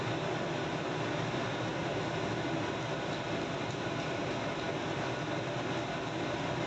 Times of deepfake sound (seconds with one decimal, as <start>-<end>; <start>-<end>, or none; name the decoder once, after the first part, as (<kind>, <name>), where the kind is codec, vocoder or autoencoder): none